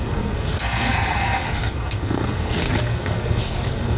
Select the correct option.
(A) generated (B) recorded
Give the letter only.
A